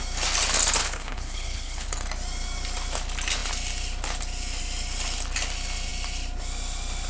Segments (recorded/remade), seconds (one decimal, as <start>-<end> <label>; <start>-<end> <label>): 0.0-0.8 recorded; 0.8-1.9 remade; 1.9-7.1 recorded